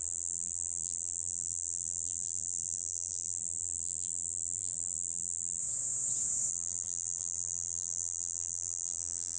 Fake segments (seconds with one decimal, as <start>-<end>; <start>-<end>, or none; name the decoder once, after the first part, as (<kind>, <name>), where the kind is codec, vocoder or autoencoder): 0.0-5.6 (vocoder, BigVGAN v2); 6.5-9.4